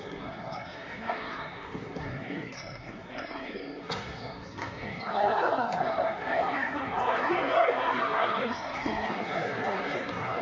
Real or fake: fake